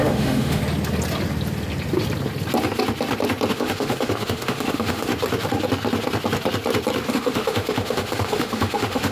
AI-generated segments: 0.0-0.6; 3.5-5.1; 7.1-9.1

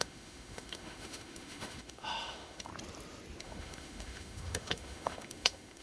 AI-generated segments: 0.0-2.7; 3.4-5.8

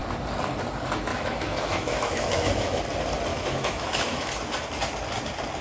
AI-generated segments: 1.1-2.8; 3.3-4.3